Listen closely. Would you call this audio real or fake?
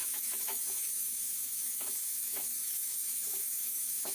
fake